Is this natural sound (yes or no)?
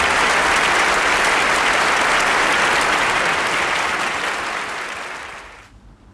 yes